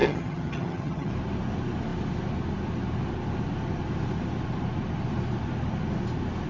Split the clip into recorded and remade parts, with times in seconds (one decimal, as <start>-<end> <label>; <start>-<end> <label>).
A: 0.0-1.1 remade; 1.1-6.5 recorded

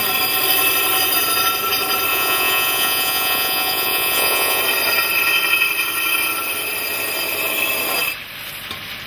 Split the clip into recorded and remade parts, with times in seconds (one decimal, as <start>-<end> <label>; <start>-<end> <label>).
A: 0.0-2.1 recorded; 2.1-4.6 remade; 4.6-9.1 recorded

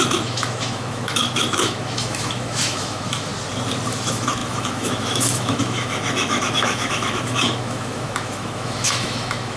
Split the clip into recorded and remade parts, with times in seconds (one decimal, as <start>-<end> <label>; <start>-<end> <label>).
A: 0.0-3.3 remade; 3.3-3.9 recorded; 3.9-9.6 remade

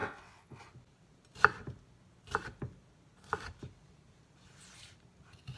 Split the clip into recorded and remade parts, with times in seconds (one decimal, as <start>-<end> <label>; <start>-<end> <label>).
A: 0.0-0.6 remade; 0.6-5.6 recorded